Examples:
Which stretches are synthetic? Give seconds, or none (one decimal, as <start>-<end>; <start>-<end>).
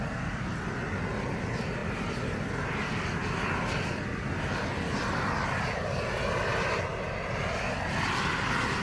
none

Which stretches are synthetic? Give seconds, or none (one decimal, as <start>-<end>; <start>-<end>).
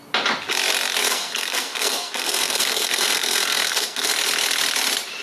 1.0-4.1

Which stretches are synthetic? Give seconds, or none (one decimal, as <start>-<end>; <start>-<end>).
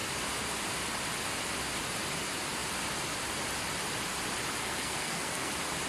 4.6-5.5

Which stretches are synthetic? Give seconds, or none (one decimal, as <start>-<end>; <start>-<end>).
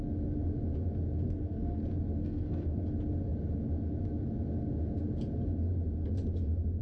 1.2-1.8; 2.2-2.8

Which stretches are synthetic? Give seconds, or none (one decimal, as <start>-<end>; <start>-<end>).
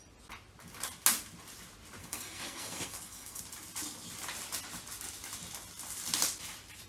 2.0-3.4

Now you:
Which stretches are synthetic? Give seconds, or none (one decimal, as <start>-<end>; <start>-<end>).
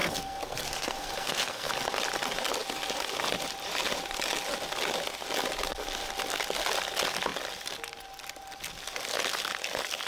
0.0-1.7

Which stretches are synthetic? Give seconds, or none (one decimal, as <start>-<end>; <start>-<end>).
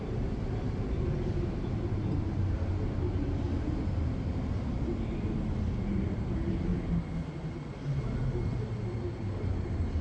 none